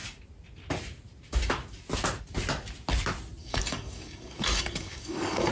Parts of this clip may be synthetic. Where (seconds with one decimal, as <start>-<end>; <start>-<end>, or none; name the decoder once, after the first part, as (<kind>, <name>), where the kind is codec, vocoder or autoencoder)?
3.4-5.5 (codec, DAC)